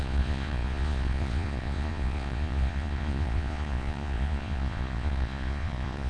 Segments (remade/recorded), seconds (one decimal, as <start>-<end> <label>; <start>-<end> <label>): 0.0-6.1 remade